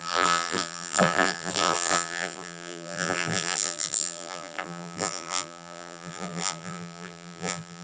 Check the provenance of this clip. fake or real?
fake